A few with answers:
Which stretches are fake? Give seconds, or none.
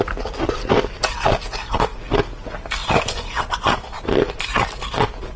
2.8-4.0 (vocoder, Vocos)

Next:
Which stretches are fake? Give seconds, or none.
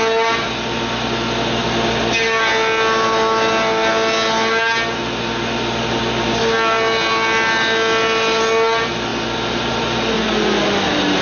none